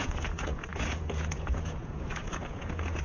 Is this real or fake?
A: fake